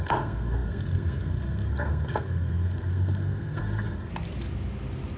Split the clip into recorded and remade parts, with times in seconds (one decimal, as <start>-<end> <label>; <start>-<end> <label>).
0.0-4.1 remade; 4.1-5.2 recorded